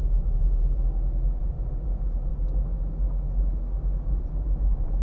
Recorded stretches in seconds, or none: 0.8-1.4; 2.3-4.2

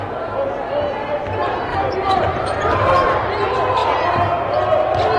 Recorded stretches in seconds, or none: 0.0-1.7; 3.2-5.2

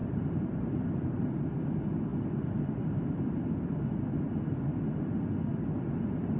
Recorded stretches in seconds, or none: 1.5-6.4

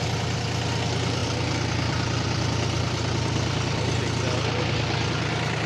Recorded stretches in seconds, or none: 0.0-1.2; 4.0-5.7

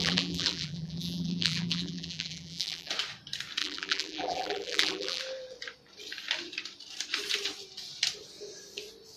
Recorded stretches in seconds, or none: 2.9-3.6; 5.2-9.2

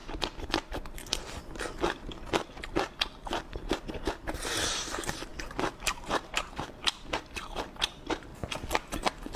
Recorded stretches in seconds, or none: 0.0-3.4; 5.3-5.8; 8.3-9.4

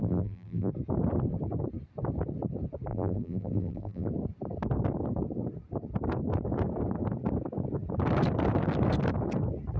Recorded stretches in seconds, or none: 0.7-2.9; 4.1-9.8